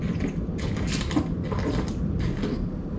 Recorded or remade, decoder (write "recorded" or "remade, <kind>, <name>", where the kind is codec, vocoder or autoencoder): recorded